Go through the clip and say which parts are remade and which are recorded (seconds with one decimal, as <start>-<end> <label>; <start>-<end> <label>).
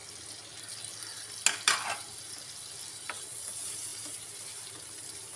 0.0-3.9 recorded; 3.9-4.8 remade; 4.8-5.4 recorded